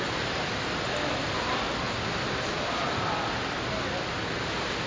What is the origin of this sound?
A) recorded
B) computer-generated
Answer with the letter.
A